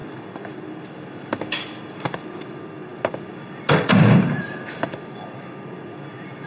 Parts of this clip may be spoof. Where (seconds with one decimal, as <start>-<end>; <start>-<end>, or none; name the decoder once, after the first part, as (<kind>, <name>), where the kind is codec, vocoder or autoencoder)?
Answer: none